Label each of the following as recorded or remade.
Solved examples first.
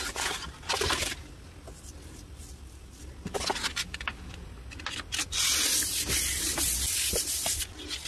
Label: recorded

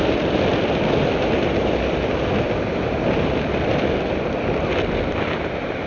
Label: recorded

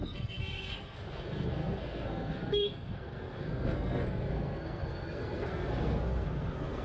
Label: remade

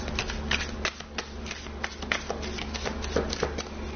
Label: recorded